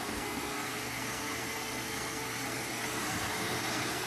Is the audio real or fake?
fake